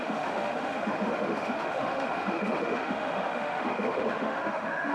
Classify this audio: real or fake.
fake